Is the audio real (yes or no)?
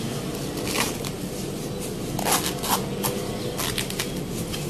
yes